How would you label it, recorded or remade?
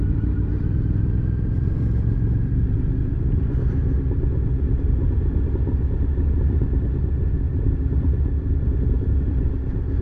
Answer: remade